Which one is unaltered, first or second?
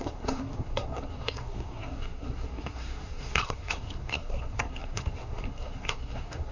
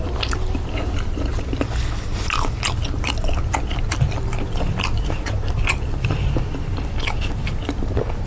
second